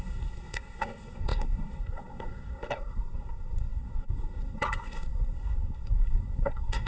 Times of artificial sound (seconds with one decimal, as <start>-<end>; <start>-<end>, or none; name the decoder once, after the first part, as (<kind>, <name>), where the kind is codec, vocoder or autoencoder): 0.0-6.9 (codec, SNAC)